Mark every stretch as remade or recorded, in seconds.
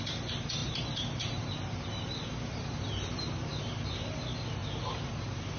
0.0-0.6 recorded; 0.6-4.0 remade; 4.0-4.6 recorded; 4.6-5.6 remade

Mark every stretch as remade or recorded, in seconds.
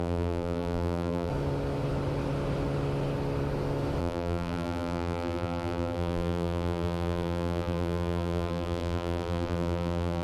0.0-1.3 remade; 1.3-4.0 recorded; 4.0-10.2 remade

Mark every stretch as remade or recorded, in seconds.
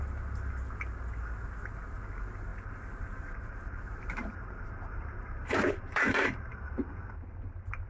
0.0-2.5 recorded; 2.5-6.8 remade; 6.8-7.9 recorded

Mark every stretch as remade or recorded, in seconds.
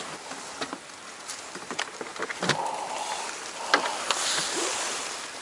0.0-2.1 remade; 2.1-2.7 recorded; 2.7-5.4 remade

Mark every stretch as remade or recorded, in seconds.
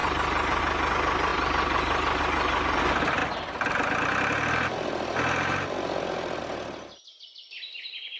0.0-1.3 recorded; 1.3-2.2 remade; 2.2-8.2 recorded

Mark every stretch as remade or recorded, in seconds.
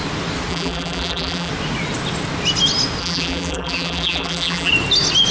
0.0-0.5 recorded; 0.5-1.5 remade; 1.5-3.0 recorded; 3.0-4.7 remade; 4.7-5.3 recorded